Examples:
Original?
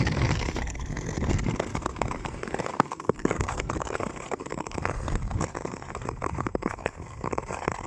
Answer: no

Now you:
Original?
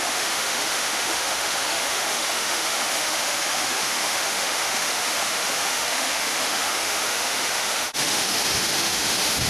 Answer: no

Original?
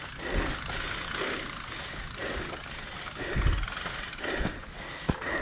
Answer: yes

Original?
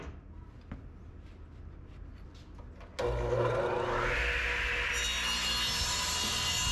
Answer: yes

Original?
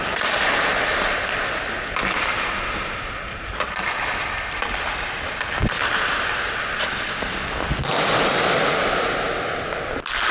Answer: yes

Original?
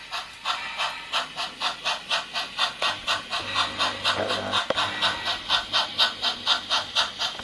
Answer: yes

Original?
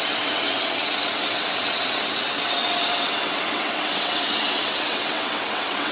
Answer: no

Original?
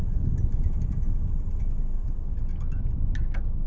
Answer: yes